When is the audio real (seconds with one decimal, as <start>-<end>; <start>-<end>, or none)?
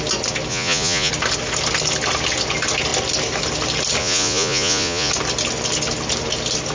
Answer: 0.0-0.5; 1.1-4.0; 5.1-6.7